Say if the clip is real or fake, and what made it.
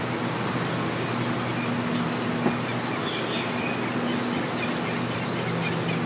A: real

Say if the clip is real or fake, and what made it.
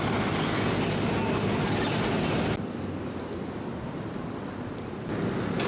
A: real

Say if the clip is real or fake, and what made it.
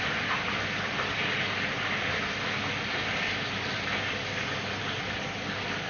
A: real